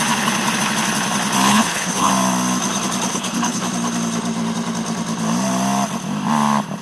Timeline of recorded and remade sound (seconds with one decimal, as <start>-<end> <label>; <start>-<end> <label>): 0.0-1.5 recorded; 1.5-2.1 remade; 2.1-3.1 recorded; 3.1-3.6 remade; 3.6-6.8 recorded